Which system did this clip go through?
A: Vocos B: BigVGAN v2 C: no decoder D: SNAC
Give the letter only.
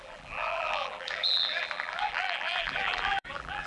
B